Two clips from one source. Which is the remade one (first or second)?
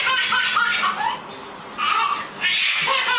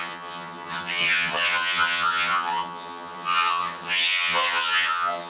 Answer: second